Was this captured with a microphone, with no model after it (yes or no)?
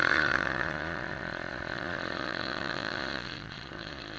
no